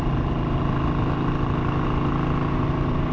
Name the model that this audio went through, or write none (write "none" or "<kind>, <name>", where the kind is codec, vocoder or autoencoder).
none